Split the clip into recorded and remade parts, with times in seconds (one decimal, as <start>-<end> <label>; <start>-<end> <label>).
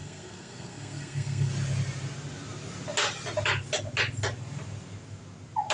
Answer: 0.0-1.5 remade; 1.5-5.7 recorded